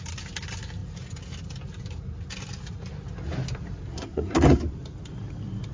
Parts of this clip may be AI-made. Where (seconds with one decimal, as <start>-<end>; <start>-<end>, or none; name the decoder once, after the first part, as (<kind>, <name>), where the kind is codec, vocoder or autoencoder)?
3.9-4.6 (codec, SNAC)